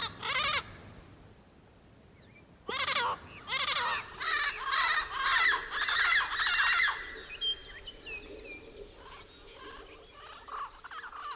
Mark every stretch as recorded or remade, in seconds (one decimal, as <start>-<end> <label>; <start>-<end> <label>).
0.0-5.6 recorded; 5.6-7.1 remade; 7.1-11.4 recorded